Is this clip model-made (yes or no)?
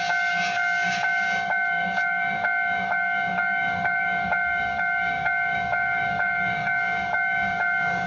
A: yes